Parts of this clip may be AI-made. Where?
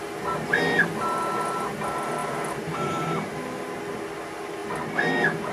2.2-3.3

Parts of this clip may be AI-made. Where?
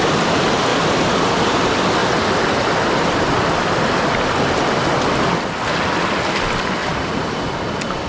0.7-1.6; 6.8-7.4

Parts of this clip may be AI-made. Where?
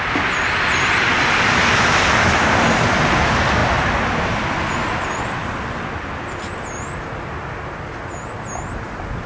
none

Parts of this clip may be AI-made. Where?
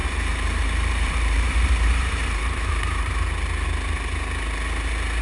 0.0-3.1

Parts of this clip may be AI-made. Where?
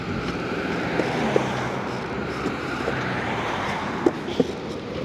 2.2-4.4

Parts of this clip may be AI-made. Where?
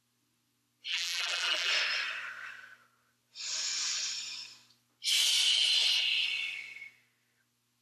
0.9-1.7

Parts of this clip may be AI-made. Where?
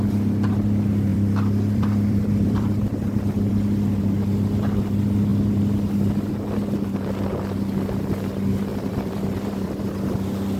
1.1-3.5; 8.7-9.8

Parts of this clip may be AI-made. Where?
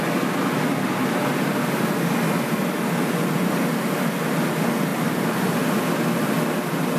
none